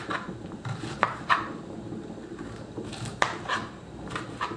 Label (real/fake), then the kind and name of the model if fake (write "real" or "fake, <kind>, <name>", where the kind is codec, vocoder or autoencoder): fake, vocoder, BigVGAN v2